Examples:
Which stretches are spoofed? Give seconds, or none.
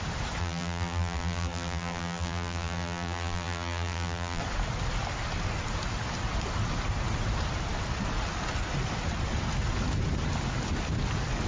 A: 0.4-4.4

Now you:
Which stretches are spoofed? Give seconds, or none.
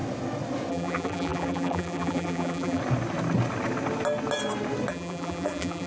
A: 0.7-2.8; 4.9-5.9